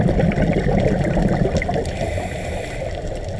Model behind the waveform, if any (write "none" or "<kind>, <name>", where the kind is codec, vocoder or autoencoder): none